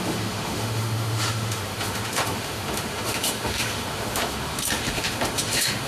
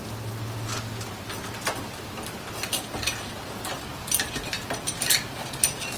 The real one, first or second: second